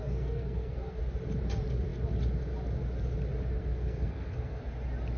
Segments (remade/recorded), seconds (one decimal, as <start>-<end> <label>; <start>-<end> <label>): 0.0-1.0 remade; 1.0-3.6 recorded; 3.6-4.6 remade; 4.6-5.2 recorded